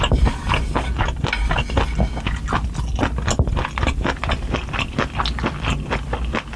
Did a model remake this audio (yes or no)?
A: no